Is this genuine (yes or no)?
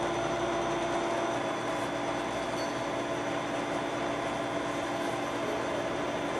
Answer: yes